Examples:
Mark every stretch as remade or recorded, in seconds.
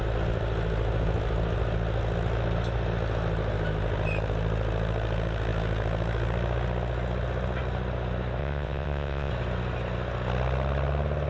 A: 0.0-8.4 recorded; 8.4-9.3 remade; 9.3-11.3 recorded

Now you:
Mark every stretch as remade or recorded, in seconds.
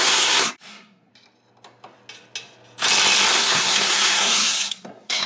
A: 0.0-1.1 remade; 1.1-3.3 recorded; 3.3-5.3 remade